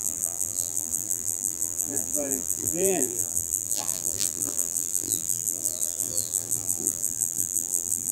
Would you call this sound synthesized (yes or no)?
yes